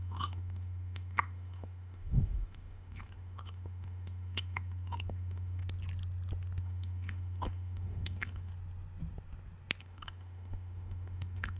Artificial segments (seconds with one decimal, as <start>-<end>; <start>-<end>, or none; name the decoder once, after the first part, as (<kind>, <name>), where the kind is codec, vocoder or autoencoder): 0.0-5.6 (autoencoder, DAC-VAE); 6.6-8.5; 9.8-11.6